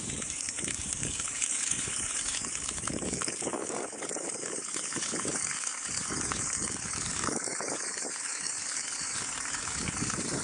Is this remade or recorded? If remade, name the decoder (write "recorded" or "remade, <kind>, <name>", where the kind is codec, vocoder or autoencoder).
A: remade, codec, DAC